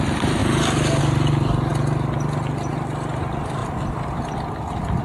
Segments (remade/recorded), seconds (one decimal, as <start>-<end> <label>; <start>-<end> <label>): 0.0-5.0 recorded